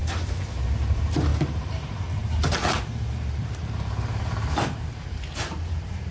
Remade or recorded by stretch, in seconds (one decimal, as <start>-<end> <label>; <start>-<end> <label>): 0.0-0.8 recorded; 0.8-6.1 remade